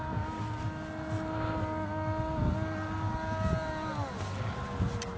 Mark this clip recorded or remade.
recorded